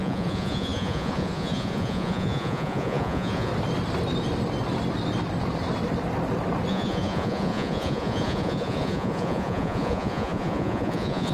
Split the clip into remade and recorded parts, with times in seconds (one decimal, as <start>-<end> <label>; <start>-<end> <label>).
0.0-3.5 remade; 3.5-6.7 recorded; 6.7-11.3 remade